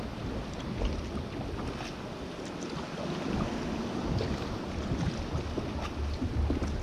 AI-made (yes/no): no